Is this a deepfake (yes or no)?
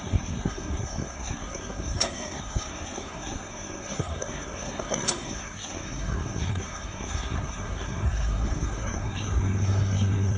yes